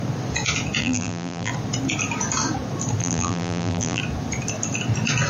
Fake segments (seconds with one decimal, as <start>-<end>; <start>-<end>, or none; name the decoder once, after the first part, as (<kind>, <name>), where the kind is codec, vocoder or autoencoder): 0.8-1.5 (vocoder, BigVGAN v2); 3.0-4.0